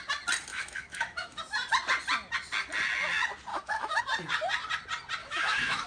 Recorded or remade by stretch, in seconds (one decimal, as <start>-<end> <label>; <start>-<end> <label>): 0.0-0.5 recorded; 0.5-1.4 remade; 1.4-3.5 recorded; 3.5-4.0 remade; 4.0-5.2 recorded; 5.2-5.9 remade